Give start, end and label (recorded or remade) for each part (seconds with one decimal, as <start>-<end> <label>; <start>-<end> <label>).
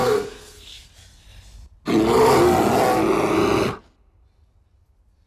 0.0-0.9 remade; 0.9-5.3 recorded